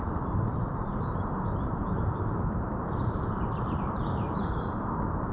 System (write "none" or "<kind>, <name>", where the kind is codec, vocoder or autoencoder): vocoder, BigVGAN v2